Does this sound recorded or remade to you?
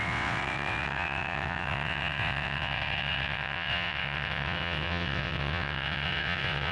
remade